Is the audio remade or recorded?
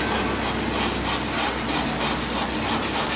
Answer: recorded